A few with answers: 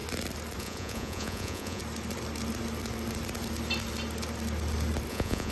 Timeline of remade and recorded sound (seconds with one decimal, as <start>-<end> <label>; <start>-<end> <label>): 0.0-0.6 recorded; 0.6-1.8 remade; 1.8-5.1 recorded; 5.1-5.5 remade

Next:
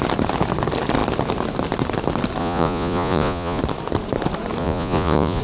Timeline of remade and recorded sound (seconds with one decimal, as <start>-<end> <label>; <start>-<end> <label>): 0.0-2.4 recorded; 2.4-3.6 remade; 3.6-4.6 recorded; 4.6-5.4 remade

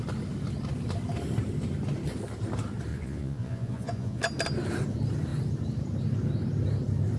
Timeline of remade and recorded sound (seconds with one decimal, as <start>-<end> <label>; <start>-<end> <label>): 0.0-2.9 recorded; 2.9-4.2 remade; 4.2-7.2 recorded